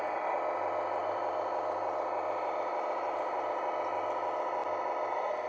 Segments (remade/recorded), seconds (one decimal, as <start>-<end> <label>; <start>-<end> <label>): 0.0-1.0 recorded; 1.0-3.7 remade; 3.7-5.5 recorded